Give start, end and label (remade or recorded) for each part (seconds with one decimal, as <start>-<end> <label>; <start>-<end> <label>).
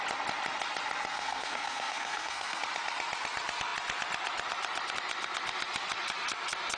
0.0-1.1 recorded; 1.1-2.6 remade; 2.6-6.8 recorded